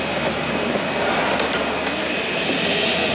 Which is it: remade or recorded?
recorded